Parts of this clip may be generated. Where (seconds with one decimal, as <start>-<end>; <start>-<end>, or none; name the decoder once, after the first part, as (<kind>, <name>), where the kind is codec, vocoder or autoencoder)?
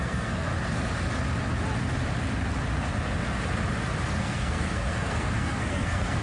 0.0-0.5 (codec, SNAC); 4.2-6.2